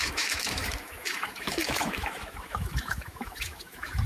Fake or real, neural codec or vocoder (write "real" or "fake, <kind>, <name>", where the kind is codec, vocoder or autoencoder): fake, autoencoder, DAC-VAE